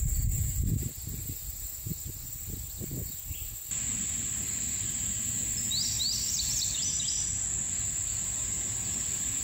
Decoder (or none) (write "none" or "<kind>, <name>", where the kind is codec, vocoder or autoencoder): none